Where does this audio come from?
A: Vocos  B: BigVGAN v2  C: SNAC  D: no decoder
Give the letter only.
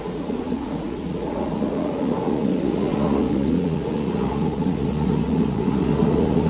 A